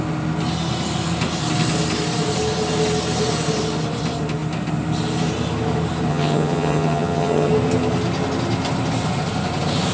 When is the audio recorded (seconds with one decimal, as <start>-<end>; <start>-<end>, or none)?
0.0-6.1; 7.5-9.9